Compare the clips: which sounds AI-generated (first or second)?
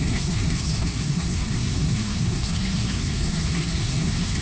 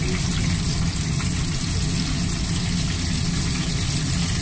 first